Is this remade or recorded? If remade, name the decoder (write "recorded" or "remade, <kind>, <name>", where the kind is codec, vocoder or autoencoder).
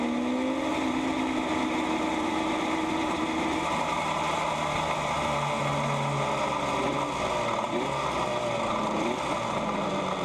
recorded